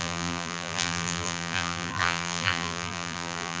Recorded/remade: remade